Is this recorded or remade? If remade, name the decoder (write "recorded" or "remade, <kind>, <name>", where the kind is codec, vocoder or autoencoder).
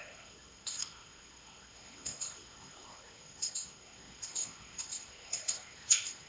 remade, codec, ZipCodec